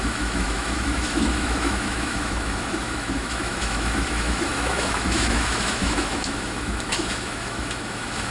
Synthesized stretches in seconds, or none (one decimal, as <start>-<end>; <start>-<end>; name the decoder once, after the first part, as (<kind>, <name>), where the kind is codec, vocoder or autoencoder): 0.0-8.3 (autoencoder, DAC-VAE)